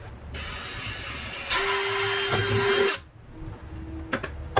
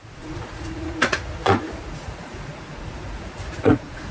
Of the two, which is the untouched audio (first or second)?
first